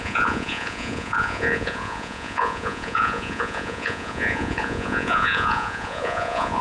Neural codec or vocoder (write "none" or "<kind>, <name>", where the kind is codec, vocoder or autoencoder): vocoder, Vocos